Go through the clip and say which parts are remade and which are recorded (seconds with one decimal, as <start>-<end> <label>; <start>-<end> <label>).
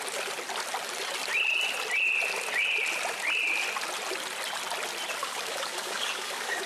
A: 0.0-5.2 recorded; 5.2-6.7 remade